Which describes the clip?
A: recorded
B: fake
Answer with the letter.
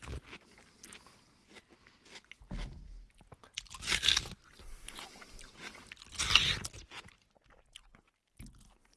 A